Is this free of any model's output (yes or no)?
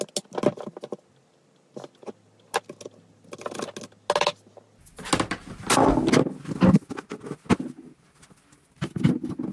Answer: yes